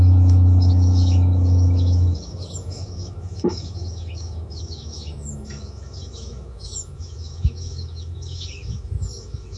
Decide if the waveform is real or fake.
fake